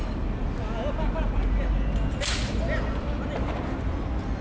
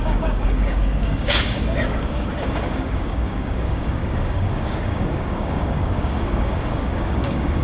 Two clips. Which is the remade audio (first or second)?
second